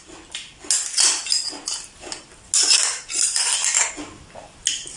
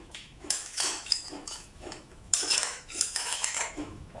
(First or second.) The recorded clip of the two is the first